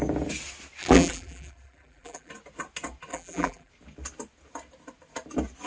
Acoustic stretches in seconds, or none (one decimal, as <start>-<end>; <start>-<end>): 0.0-0.8; 2.3-3.1; 3.7-5.7